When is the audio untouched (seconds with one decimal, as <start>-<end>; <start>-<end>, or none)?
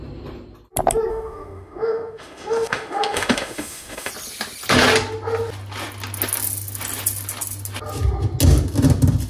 0.0-1.1; 4.1-9.3